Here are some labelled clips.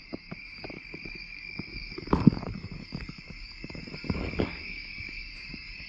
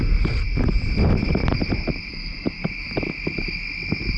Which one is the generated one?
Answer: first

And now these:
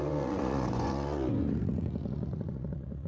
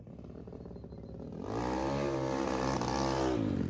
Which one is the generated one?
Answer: first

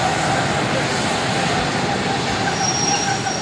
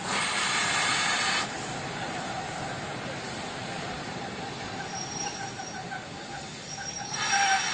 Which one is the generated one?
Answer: second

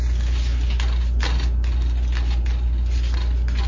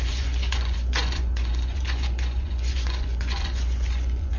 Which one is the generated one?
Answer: second